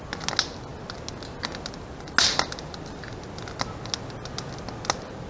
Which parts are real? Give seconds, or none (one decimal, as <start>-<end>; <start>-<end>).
0.0-5.3